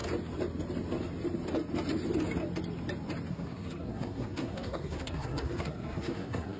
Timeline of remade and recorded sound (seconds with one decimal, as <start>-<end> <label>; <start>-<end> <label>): 0.0-3.3 recorded; 3.3-6.6 remade